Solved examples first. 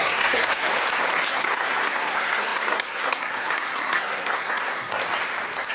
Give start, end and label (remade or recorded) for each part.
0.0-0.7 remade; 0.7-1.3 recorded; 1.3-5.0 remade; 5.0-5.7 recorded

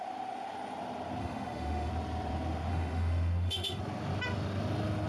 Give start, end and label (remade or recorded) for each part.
0.0-1.2 recorded; 1.2-1.9 remade; 1.9-2.7 recorded; 2.7-3.8 remade; 3.8-5.1 recorded

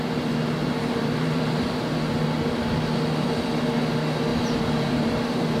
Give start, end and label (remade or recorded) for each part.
0.0-0.6 recorded; 0.6-1.6 remade; 1.6-4.3 recorded; 4.3-5.6 remade

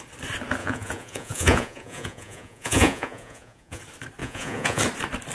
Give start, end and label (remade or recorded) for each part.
0.0-0.6 recorded; 0.6-3.8 remade; 3.8-4.2 recorded; 4.2-4.8 remade; 4.8-5.3 recorded

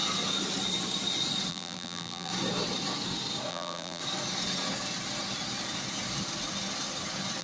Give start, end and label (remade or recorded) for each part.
0.0-1.5 recorded; 1.5-2.3 remade; 2.3-3.5 recorded; 3.5-4.0 remade; 4.0-7.4 recorded

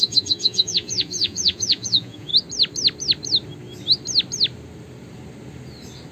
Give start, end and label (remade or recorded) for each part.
0.0-2.3 remade; 2.3-6.1 recorded

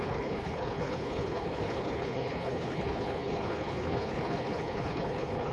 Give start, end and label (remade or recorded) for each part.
0.0-5.5 remade

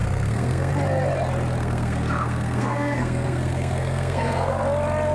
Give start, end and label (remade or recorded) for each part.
0.0-0.7 remade; 0.7-1.6 recorded; 1.6-4.6 remade; 4.6-5.1 recorded